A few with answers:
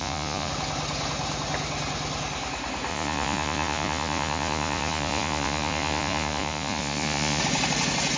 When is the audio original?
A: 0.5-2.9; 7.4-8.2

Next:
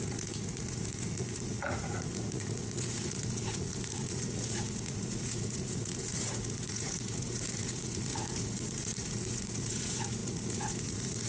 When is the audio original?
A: none

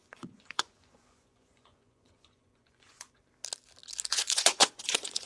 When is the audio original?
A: 3.2-4.1